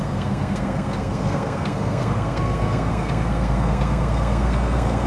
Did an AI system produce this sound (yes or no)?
yes